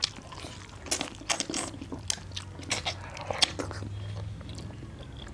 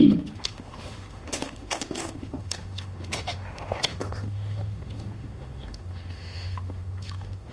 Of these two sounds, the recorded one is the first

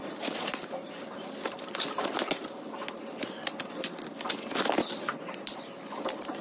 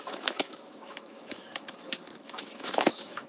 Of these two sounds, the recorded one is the first